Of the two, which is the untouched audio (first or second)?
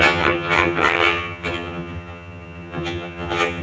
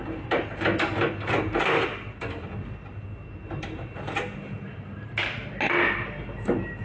second